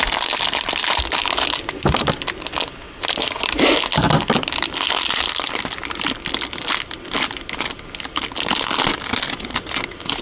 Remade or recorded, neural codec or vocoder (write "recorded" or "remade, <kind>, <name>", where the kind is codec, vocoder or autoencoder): recorded